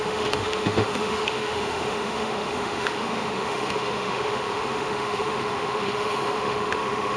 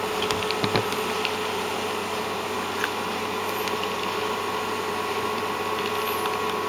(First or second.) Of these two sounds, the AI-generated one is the first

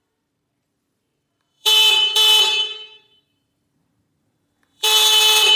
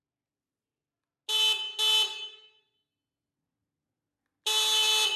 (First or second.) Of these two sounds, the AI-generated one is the first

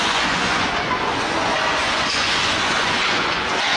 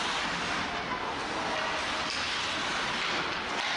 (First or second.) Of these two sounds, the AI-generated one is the first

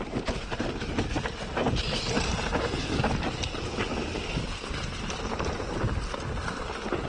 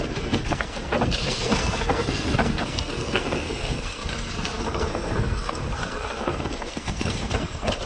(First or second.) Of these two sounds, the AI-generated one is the second